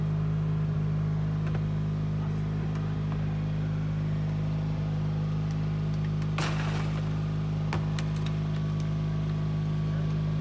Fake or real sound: real